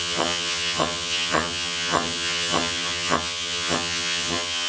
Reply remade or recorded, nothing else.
remade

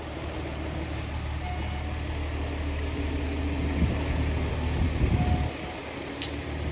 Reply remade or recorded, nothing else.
recorded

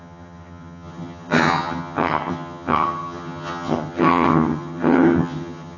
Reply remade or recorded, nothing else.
remade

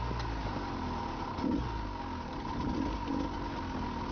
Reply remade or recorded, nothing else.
recorded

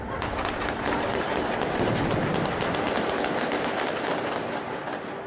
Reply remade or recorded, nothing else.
recorded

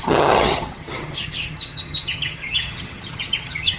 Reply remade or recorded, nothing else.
remade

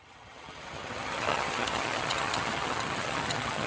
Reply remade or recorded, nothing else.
remade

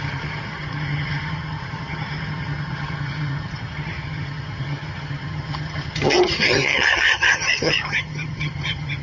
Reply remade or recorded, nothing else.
remade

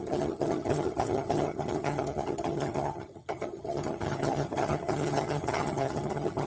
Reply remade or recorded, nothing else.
remade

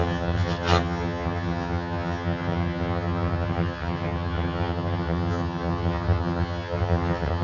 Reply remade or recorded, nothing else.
remade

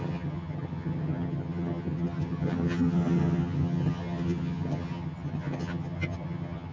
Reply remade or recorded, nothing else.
remade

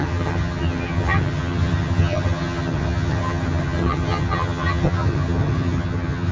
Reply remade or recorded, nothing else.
remade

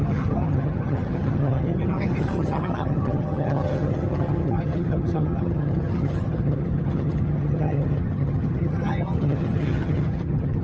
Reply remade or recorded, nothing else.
remade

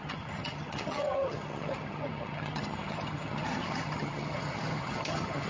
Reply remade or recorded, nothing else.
remade